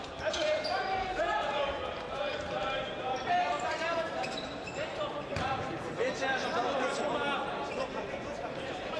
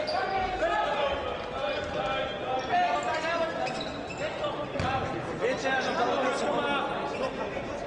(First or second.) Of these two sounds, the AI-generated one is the first